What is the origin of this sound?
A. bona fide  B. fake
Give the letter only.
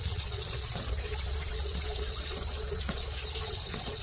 B